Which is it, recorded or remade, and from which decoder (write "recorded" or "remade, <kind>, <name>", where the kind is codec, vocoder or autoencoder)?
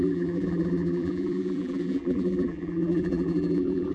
remade, vocoder, BigVGAN v2